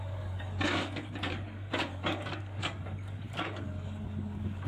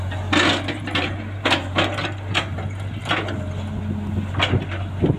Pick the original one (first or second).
second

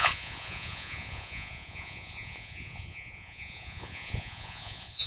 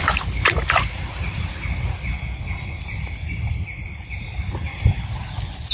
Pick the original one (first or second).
second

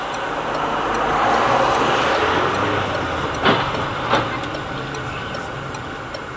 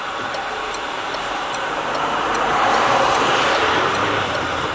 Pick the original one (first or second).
first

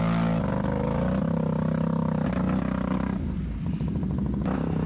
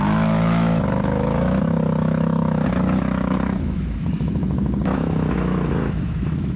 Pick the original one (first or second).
first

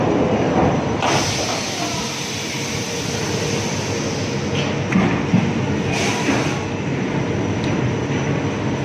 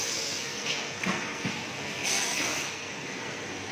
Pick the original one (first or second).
first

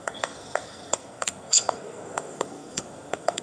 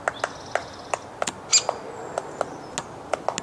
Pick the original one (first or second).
second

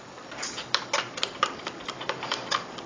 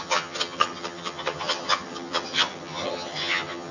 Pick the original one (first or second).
first